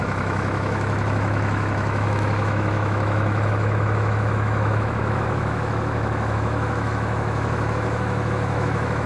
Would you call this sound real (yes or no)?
no